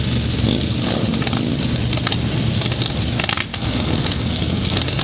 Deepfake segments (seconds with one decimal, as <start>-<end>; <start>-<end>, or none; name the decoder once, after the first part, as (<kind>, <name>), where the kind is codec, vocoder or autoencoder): 3.5-5.0 (codec, SNAC)